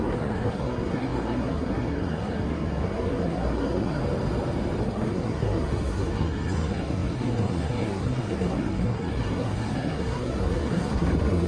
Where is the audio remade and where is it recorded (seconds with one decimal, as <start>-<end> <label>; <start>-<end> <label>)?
0.0-4.0 remade; 4.0-4.8 recorded; 4.8-11.5 remade